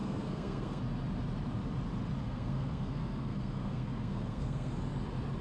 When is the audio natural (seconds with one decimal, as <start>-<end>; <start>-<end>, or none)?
0.8-2.2; 4.7-5.4